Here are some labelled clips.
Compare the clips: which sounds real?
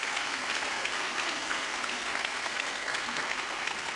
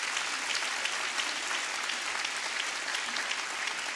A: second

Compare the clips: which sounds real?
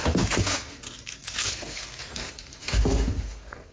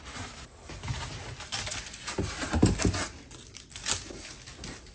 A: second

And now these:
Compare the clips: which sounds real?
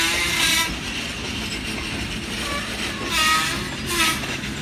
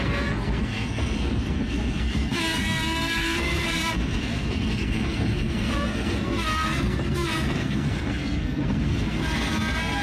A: first